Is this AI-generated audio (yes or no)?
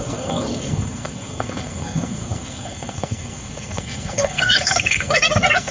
yes